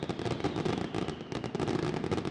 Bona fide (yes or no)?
yes